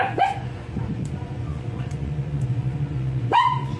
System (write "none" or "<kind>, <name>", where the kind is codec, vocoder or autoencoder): vocoder, Vocos